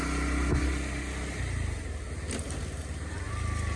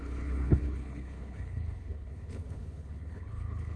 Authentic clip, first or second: first